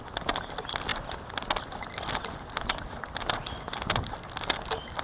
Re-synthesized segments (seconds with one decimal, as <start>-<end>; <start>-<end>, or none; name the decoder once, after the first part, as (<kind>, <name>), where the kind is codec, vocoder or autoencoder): none